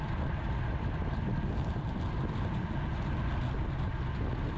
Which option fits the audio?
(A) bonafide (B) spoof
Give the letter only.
A